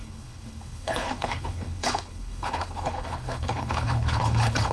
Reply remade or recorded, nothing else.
remade